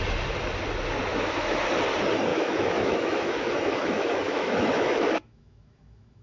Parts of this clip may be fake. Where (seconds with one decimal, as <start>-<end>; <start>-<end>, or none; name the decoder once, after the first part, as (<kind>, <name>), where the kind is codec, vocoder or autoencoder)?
1.1-1.7 (autoencoder, DAC-VAE); 2.3-6.2